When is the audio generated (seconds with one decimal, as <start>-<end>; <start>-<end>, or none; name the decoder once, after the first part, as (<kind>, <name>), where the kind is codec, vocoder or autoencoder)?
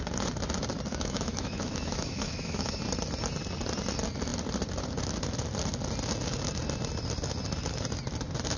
0.9-2.8 (autoencoder, DAC-VAE)